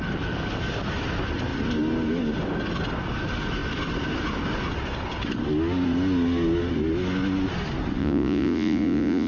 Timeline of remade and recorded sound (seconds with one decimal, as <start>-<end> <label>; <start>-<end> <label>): 0.0-8.0 recorded; 8.0-9.3 remade